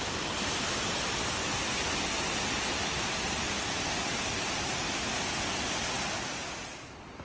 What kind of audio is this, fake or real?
real